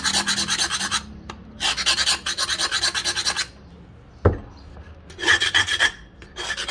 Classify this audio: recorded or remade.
recorded